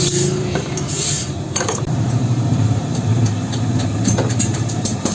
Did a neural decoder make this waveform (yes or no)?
yes